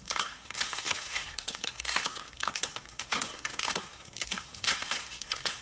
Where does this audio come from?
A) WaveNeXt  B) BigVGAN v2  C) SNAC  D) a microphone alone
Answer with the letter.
C